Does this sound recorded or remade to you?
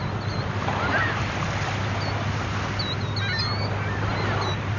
recorded